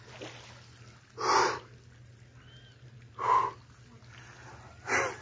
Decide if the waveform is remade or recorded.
recorded